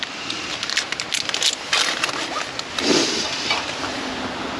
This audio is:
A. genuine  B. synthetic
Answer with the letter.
A